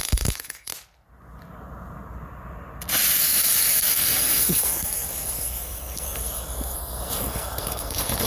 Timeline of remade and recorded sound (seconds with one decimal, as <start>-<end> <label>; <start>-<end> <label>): 0.0-0.7 remade; 0.7-3.2 recorded; 3.2-8.3 remade